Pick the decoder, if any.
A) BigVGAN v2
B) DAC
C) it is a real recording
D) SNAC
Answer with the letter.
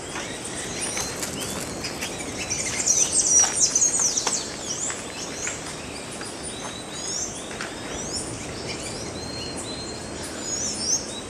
C